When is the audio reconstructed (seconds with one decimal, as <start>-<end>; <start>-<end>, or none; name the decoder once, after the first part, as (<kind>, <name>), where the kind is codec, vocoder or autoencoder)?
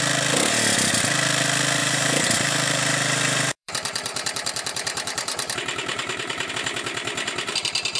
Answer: 1.8-6.5 (vocoder, BigVGAN v2)